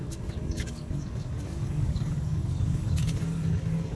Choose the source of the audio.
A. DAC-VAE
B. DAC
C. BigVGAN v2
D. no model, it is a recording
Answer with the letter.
B